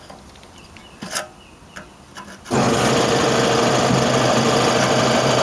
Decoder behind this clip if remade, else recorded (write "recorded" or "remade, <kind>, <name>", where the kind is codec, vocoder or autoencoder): recorded